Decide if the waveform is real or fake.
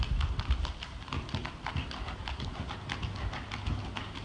real